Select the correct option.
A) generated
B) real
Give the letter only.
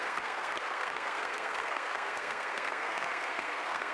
A